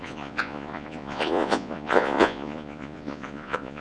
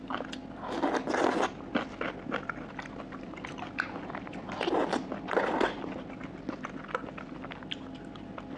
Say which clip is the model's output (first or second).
first